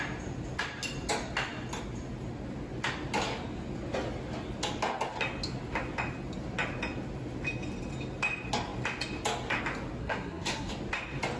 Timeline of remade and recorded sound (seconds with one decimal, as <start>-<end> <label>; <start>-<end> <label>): 0.0-10.0 recorded; 10.0-10.7 remade; 10.7-11.4 recorded